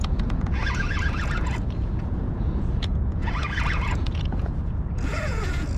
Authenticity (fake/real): fake